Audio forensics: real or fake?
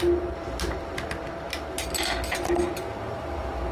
real